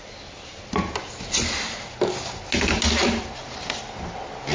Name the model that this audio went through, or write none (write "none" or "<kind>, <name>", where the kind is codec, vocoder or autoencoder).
none